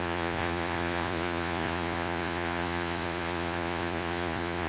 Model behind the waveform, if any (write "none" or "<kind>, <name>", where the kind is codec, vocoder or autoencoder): vocoder, Vocos